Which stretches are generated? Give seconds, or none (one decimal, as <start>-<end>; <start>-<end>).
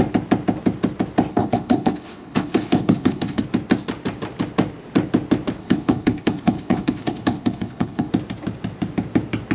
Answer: 1.3-3.4; 5.6-8.1